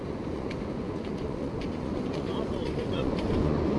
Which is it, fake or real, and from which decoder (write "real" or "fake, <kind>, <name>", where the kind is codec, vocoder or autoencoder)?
fake, vocoder, Vocos